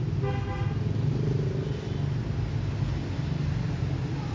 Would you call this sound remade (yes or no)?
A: no